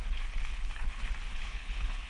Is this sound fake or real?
fake